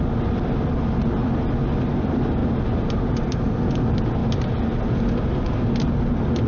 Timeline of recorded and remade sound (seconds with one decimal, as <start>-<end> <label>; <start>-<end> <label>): 0.0-4.2 recorded; 4.2-4.8 remade; 4.8-6.5 recorded